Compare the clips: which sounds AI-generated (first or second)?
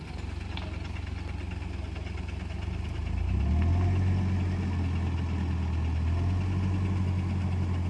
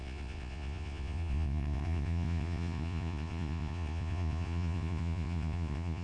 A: second